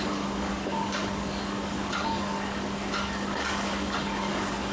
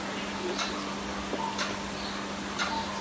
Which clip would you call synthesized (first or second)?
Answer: first